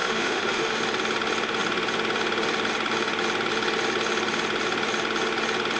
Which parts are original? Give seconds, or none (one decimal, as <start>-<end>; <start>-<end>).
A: 0.8-5.8